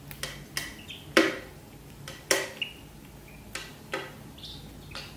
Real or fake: real